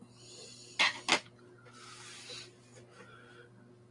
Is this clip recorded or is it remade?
recorded